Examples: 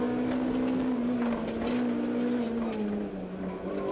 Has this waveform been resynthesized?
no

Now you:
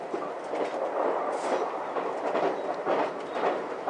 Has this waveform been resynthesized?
no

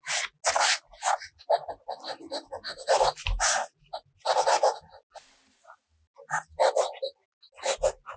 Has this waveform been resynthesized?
no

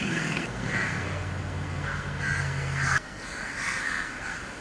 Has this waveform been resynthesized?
yes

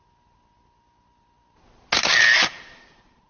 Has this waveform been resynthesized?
no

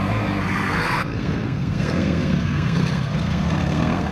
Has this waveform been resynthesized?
yes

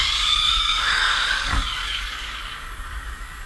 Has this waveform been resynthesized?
yes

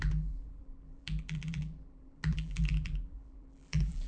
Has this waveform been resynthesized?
yes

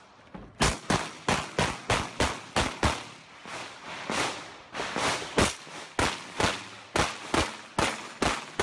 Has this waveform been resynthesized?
no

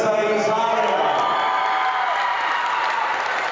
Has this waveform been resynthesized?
no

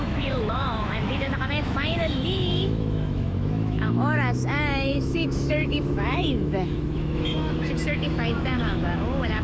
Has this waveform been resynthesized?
yes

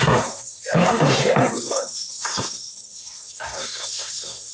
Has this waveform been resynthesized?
yes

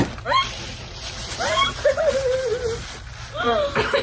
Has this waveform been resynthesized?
yes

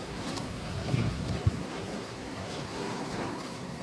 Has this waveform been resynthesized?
yes